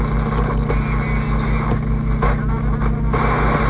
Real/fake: real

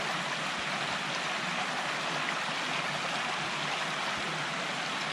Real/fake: real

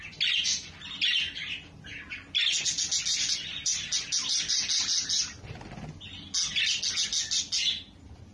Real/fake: real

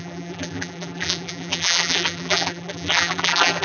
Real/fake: fake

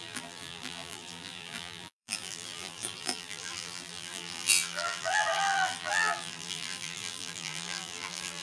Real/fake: fake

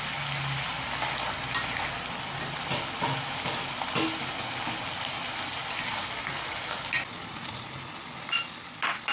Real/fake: real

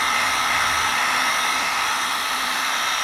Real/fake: real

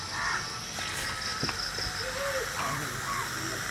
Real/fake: real